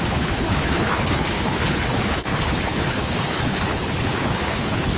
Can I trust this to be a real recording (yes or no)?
no